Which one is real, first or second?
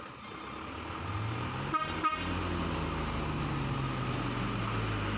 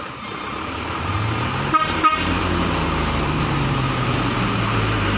first